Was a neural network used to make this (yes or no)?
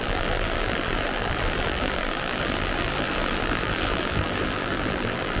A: yes